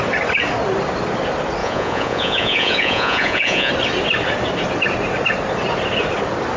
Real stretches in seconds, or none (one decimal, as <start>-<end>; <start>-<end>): 0.0-1.6; 3.7-6.6